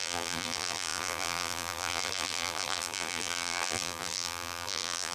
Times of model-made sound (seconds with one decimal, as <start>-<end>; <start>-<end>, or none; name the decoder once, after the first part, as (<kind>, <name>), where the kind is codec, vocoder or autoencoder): 0.0-5.1 (vocoder, BigVGAN v2)

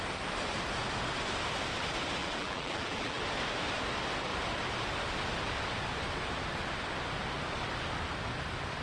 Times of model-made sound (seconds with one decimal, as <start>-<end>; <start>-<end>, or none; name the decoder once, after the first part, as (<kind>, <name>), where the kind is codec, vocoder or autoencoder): 2.2-3.2 (vocoder, BigVGAN v2)

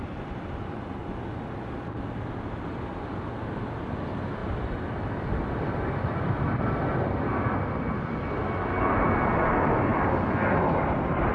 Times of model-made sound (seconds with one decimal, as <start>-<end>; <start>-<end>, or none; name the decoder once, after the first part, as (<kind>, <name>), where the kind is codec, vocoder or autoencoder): 4.4-8.3 (vocoder, BigVGAN v2); 9.9-11.3